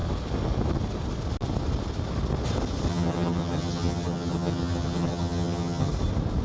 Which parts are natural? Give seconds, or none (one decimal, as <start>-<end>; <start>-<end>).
0.0-2.9; 5.9-6.4